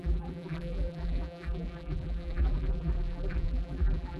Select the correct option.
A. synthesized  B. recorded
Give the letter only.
A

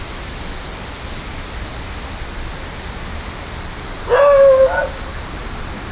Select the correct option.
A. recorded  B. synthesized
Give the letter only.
A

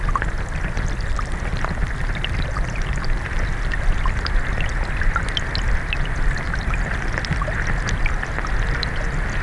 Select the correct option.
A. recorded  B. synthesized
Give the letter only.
A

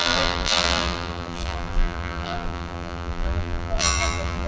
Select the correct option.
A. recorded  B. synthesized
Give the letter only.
B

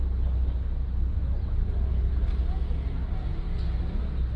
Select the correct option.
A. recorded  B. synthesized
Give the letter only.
A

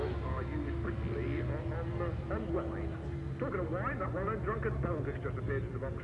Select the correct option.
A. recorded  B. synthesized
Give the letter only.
A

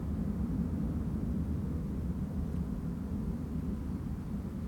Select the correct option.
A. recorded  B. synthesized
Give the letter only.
A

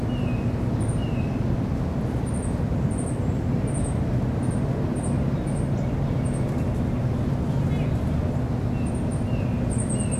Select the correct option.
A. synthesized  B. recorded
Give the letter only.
B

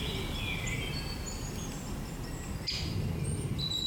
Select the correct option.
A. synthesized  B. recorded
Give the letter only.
B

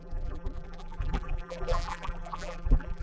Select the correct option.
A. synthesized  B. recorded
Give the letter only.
A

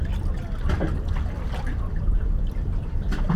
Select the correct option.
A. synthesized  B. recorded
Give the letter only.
B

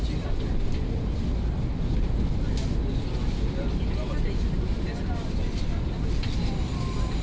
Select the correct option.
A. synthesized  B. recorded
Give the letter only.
B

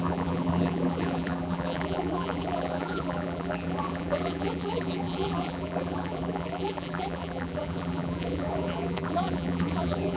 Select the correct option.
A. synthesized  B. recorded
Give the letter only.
A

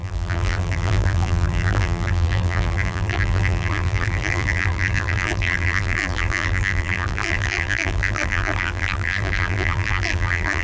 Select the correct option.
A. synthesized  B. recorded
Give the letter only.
A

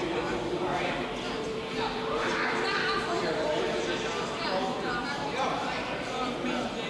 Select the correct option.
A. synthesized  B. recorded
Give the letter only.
A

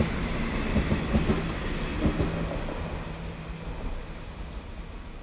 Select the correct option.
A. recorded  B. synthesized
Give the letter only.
A